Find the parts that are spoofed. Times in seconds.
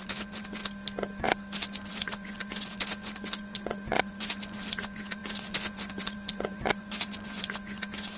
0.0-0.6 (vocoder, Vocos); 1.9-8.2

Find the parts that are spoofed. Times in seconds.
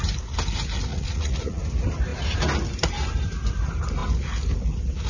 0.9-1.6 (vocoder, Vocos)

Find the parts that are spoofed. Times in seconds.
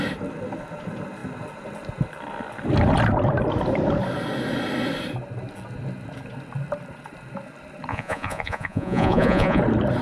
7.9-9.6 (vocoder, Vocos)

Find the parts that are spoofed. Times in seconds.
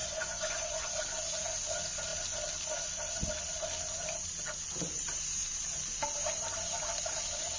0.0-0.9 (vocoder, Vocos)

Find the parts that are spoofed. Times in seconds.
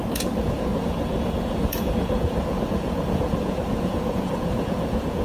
0.0-5.2 (vocoder, Vocos)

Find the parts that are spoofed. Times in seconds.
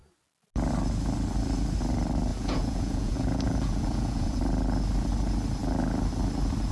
2.3-4.4 (vocoder, Vocos)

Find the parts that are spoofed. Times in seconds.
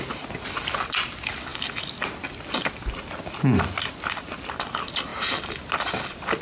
none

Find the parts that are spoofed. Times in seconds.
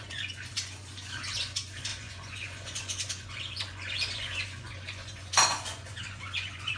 0.0-6.8 (vocoder, Vocos)